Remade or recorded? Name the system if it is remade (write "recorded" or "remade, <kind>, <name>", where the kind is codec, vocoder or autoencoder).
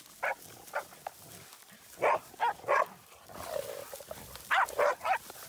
recorded